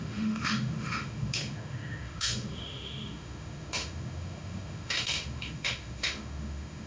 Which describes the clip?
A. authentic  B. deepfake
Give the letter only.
B